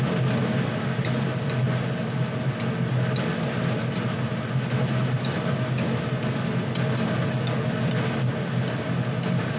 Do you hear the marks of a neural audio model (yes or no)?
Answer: no